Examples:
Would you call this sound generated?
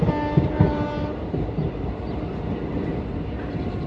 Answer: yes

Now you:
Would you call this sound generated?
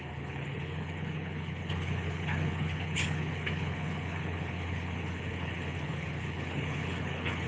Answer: yes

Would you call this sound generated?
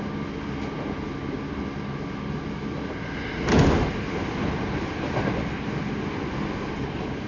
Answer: no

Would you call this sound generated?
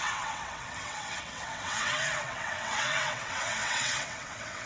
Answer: yes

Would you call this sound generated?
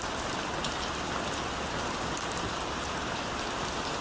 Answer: no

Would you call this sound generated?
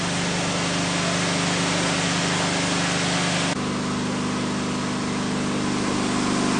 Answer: no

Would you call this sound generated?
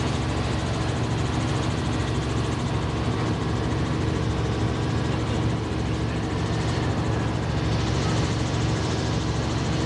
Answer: no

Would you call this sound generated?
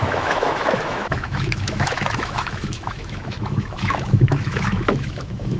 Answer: yes